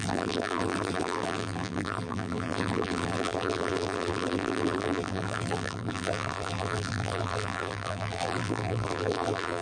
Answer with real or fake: fake